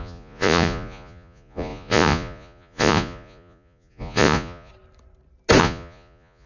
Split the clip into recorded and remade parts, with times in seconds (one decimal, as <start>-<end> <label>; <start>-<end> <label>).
0.0-4.7 remade; 4.7-5.6 recorded; 5.6-6.5 remade